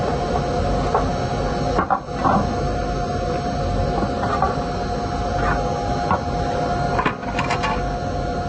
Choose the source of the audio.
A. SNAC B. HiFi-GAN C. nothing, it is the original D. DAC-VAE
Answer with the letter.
C